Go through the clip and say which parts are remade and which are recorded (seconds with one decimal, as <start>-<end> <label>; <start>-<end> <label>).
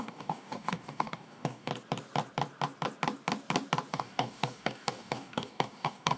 0.0-1.7 remade; 1.7-3.9 recorded; 3.9-6.2 remade